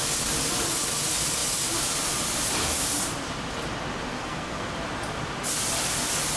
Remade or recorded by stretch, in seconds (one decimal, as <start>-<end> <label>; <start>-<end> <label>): 0.0-4.1 recorded; 4.1-4.7 remade; 4.7-6.4 recorded